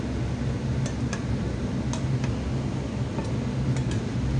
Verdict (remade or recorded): recorded